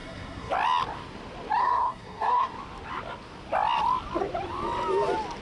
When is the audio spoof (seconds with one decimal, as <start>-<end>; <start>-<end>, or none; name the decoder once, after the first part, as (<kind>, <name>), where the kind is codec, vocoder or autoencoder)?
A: 0.0-0.5 (codec, SNAC); 1.6-2.5

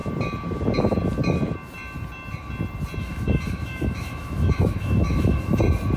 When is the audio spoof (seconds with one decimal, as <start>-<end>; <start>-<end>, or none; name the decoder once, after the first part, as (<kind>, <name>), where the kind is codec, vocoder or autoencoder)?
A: 3.0-5.6 (autoencoder, DAC-VAE)

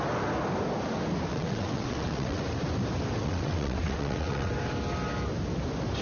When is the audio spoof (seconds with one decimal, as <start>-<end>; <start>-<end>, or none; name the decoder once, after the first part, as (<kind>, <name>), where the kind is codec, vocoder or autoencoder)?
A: 1.3-2.4 (vocoder, WaveNeXt); 3.2-4.5

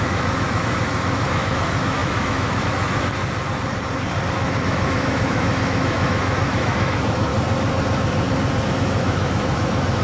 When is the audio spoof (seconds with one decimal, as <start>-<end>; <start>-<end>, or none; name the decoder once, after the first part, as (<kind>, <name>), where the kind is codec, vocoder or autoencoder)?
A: 0.0-3.2 (autoencoder, DAC-VAE); 4.3-7.3; 8.7-10.0

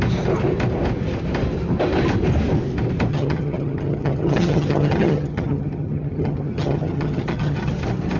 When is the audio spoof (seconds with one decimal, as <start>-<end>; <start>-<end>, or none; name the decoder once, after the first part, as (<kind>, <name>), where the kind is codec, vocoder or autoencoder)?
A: 3.1-7.7 (vocoder, HiFi-GAN)